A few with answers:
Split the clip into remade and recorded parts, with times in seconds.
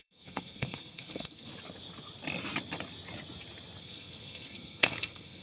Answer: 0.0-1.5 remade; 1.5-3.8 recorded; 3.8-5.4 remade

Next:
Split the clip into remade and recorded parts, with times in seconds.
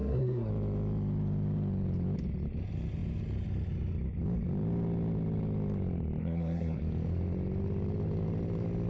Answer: 0.0-0.5 remade; 0.5-6.2 recorded; 6.2-6.8 remade; 6.8-8.9 recorded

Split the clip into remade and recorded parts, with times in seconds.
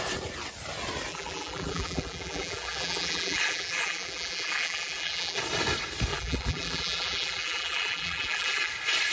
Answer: 0.0-1.1 recorded; 1.1-5.4 remade; 5.4-6.1 recorded; 6.1-8.7 remade; 8.7-9.1 recorded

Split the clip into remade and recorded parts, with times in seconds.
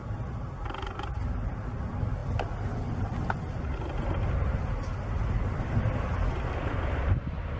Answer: 0.0-7.6 recorded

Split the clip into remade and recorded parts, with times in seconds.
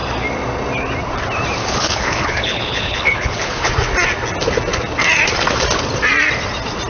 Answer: 0.0-1.6 recorded; 1.6-3.7 remade; 3.7-6.9 recorded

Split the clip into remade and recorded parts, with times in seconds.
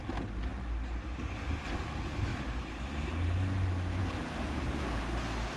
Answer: 0.0-5.6 recorded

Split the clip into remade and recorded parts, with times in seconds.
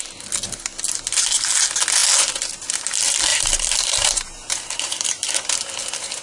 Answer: 0.0-3.3 recorded; 3.3-5.5 remade; 5.5-6.2 recorded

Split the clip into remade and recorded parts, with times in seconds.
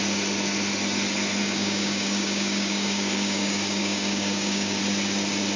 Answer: 0.0-1.4 recorded; 1.4-4.8 remade; 4.8-5.6 recorded